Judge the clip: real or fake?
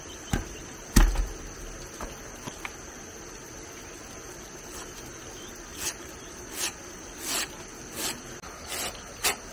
real